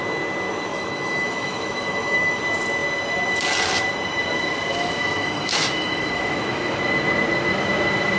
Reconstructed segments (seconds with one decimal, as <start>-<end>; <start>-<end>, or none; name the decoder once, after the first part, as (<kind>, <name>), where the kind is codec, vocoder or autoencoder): 0.7-2.4 (autoencoder, DAC-VAE); 4.7-6.8